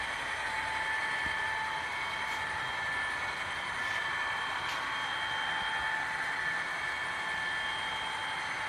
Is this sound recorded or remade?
recorded